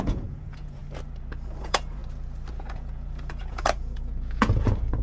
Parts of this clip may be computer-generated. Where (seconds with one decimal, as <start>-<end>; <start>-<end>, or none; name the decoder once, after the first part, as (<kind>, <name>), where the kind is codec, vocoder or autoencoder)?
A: 0.0-0.8 (vocoder, Vocos); 1.6-2.0; 2.5-5.0